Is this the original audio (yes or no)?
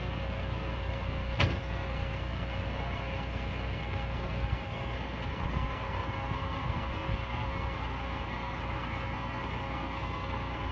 no